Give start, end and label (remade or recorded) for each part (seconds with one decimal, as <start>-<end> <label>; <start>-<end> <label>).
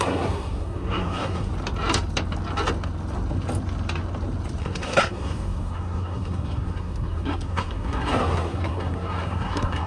0.0-1.5 remade; 1.5-4.6 recorded; 4.6-9.9 remade